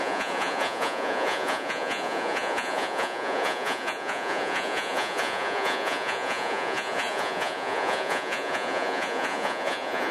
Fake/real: fake